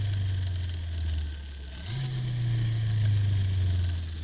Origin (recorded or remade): recorded